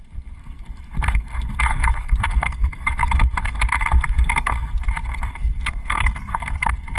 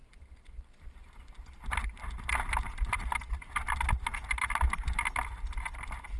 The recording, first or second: second